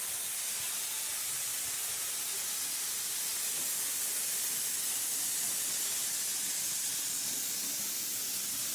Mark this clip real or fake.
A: real